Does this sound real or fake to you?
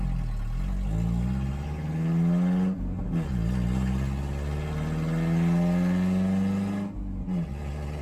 real